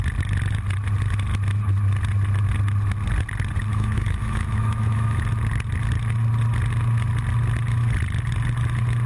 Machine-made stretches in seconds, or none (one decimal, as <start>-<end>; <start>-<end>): 3.7-5.2

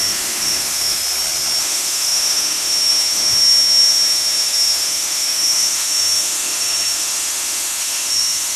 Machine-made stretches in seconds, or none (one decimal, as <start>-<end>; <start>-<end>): 0.0-1.0; 1.6-8.6